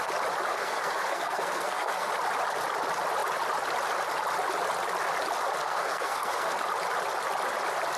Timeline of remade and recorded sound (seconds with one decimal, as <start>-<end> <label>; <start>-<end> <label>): 0.0-0.5 recorded; 0.5-2.1 remade; 2.1-5.6 recorded; 5.6-6.6 remade; 6.6-8.0 recorded